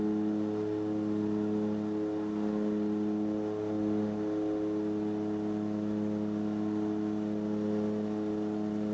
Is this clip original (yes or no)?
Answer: yes